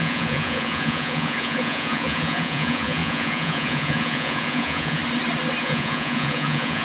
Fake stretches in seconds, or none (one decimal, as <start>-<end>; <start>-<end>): 0.0-5.0; 5.6-6.8